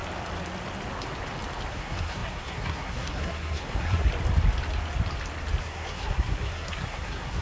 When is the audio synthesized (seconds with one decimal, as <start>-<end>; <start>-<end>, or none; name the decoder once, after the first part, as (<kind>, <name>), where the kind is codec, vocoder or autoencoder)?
1.7-4.1 (codec, SNAC); 5.6-7.4

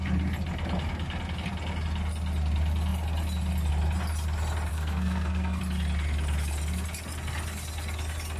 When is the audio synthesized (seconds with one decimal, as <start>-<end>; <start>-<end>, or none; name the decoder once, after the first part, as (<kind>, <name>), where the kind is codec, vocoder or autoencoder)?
4.7-5.6 (codec, SNAC)

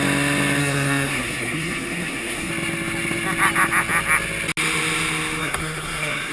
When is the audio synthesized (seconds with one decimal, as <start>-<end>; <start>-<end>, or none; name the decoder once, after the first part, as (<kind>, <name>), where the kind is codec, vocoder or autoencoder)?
0.6-2.5 (codec, SNAC); 5.4-6.3

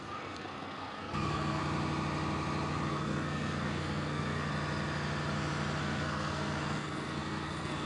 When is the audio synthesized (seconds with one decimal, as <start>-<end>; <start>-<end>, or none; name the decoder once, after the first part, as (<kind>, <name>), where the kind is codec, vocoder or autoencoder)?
0.0-1.6 (codec, SNAC); 2.9-4.5; 5.8-7.9